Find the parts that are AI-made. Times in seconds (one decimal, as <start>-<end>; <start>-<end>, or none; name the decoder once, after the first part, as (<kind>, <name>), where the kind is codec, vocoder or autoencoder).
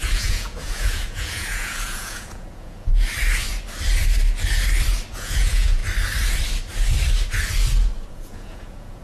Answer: 0.0-2.9 (vocoder, Vocos); 5.1-5.8; 8.1-9.0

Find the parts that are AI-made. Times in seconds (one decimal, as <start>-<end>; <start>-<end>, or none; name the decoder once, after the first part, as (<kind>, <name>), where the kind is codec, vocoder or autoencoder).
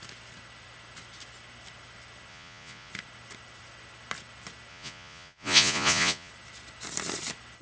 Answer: 2.3-2.9 (vocoder, Vocos); 4.7-6.3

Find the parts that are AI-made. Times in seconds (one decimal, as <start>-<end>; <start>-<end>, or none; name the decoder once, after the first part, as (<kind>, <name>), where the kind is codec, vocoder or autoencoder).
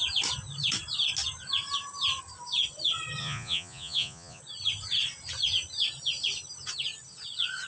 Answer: 3.2-4.4 (vocoder, Vocos)